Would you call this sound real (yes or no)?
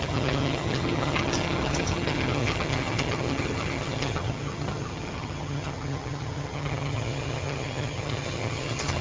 no